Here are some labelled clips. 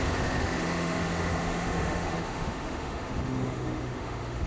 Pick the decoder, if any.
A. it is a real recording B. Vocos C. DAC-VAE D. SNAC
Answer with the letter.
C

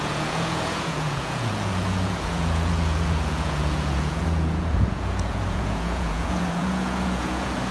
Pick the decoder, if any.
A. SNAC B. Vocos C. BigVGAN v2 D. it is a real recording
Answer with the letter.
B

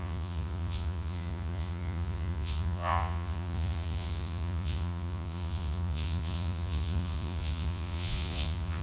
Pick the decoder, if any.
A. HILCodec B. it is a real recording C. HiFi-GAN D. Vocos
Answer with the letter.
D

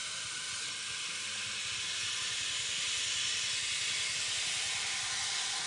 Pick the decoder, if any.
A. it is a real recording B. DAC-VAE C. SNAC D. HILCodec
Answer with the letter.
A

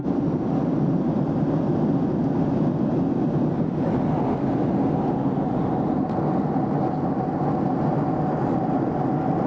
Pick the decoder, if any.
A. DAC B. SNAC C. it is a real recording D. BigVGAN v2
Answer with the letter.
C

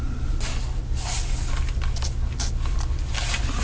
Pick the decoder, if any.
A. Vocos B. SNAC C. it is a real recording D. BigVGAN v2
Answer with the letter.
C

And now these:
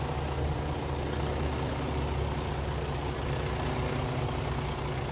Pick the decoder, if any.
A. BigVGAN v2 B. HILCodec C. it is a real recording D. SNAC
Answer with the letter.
C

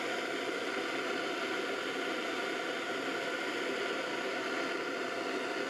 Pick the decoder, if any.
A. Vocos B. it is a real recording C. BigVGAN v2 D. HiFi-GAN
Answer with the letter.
B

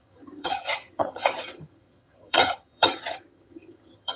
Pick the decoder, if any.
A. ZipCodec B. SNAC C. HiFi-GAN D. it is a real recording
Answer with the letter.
C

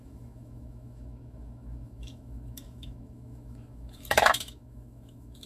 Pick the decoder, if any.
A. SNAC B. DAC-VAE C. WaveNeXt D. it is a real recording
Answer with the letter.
B